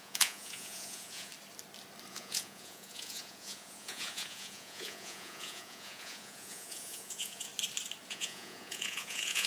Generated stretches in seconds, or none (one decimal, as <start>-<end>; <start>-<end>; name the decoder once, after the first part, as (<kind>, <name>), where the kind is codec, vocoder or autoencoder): 0.0-1.3 (vocoder, Vocos); 2.1-7.5; 8.1-9.5